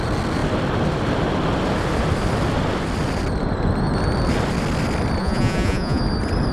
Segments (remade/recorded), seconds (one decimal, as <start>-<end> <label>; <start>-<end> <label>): 0.0-5.2 recorded; 5.2-6.0 remade; 6.0-6.5 recorded